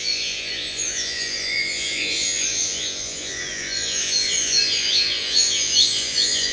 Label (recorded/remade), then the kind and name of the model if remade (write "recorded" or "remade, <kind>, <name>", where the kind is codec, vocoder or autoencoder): remade, vocoder, Vocos